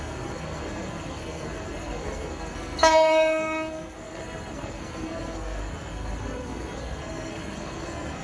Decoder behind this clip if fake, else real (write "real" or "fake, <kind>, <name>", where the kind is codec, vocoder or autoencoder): fake, codec, SNAC